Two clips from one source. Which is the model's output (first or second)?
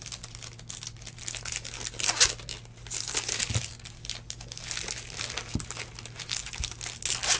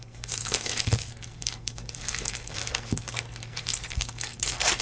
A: second